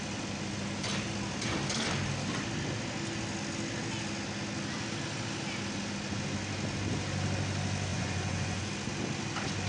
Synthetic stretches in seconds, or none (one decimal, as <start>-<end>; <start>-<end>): 7.9-8.7